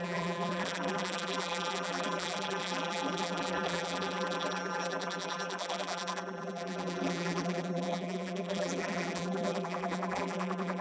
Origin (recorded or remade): remade